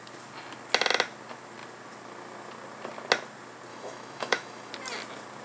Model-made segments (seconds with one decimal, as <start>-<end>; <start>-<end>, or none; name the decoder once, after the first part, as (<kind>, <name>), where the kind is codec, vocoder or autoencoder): 3.7-4.7 (autoencoder, DAC-VAE)